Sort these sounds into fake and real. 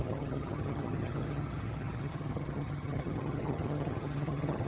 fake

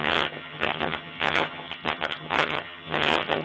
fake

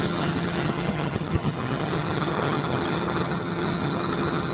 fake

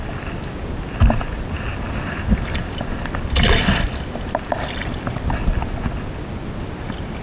real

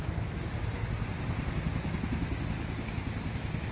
real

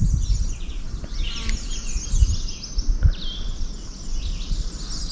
real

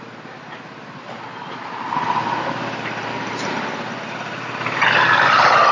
real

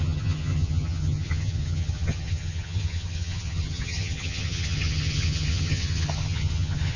fake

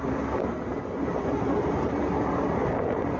real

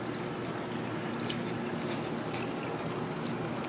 real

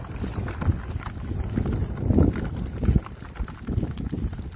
real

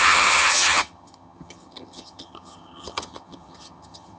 fake